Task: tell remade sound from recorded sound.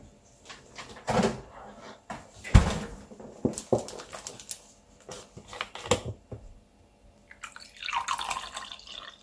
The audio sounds recorded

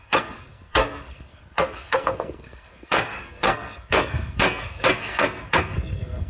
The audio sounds remade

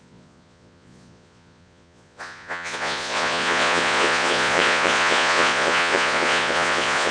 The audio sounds remade